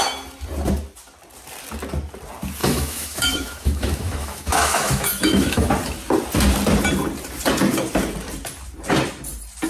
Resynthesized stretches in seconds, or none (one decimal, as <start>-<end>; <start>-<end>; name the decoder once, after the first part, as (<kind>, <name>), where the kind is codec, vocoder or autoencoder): 2.6-5.7 (autoencoder, DAC-VAE)